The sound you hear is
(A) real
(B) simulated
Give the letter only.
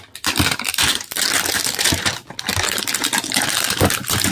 A